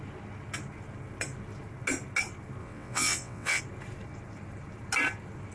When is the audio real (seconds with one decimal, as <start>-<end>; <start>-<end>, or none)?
0.0-2.6; 3.6-5.5